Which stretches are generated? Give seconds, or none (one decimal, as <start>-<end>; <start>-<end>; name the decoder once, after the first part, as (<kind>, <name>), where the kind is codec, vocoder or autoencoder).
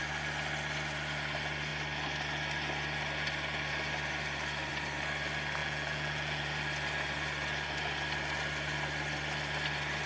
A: 5.6-6.4 (vocoder, Vocos)